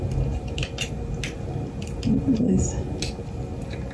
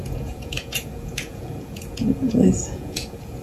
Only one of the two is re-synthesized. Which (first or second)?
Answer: second